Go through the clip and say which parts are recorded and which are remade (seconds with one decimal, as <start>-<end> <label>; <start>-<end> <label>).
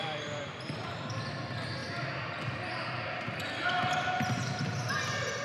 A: 0.0-5.4 recorded